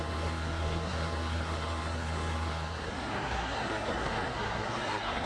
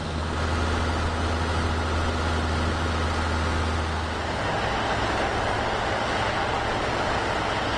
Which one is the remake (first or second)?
first